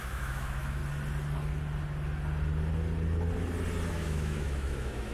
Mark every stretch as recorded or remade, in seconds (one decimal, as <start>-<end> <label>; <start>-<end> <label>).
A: 0.0-0.8 remade; 0.8-3.9 recorded; 3.9-5.1 remade